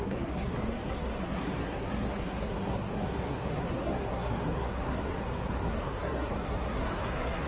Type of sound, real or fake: fake